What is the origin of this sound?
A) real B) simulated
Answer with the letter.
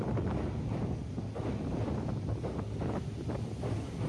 A